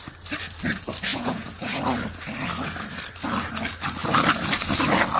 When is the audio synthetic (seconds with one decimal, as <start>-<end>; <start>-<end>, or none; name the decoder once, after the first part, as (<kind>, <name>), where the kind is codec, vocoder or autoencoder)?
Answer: 1.1-1.8 (vocoder, Vocos)